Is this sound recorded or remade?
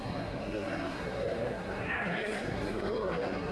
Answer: remade